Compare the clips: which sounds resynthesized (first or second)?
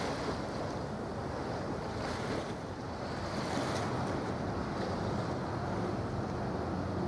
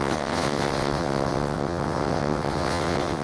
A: second